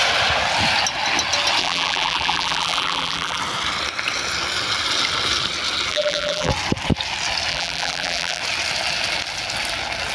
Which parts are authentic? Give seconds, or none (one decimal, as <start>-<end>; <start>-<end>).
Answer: 0.0-1.6; 3.4-5.9; 6.5-7.5; 8.4-10.1